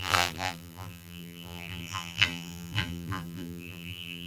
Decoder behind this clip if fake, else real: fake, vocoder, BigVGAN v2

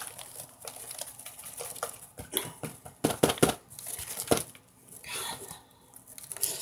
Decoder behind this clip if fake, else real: real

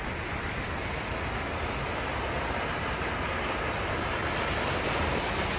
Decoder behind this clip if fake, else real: real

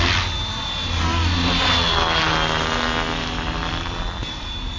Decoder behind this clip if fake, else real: real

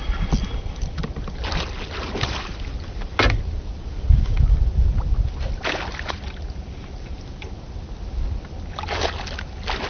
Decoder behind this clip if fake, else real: real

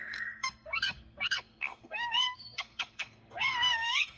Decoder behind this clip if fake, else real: fake, codec, SNAC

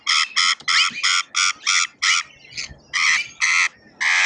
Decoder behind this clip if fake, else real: real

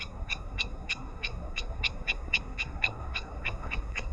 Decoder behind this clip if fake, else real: fake, codec, SNAC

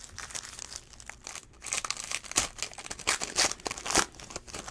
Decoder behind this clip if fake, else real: real